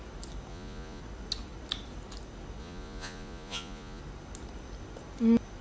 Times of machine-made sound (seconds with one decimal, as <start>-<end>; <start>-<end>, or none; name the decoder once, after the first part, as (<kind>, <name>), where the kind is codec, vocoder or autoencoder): 0.5-1.0 (vocoder, Vocos); 2.6-4.0